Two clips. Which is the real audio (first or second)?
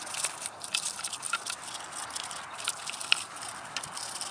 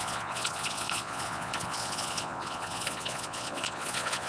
first